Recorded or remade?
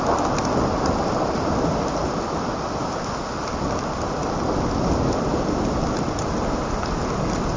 recorded